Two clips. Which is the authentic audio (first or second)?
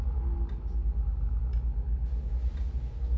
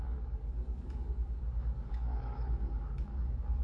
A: first